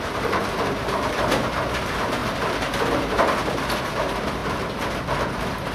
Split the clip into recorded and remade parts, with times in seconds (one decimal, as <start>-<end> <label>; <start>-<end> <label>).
0.0-2.2 remade; 2.2-3.8 recorded; 3.8-5.7 remade